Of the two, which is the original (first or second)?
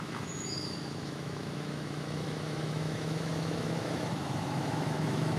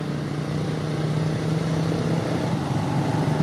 second